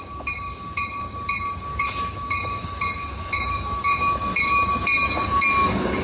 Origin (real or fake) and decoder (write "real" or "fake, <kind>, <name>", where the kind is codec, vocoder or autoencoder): fake, codec, DAC